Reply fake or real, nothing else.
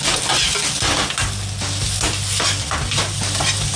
real